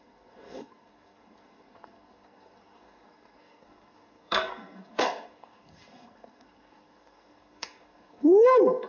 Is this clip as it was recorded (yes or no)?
no